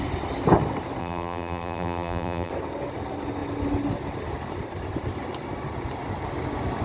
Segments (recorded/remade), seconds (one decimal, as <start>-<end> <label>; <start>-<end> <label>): 0.0-1.0 recorded; 1.0-2.5 remade; 2.5-6.8 recorded